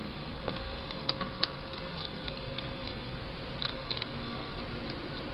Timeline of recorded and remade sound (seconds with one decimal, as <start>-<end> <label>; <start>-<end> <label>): 0.0-3.2 remade; 3.2-3.7 recorded; 3.7-4.6 remade; 4.6-5.3 recorded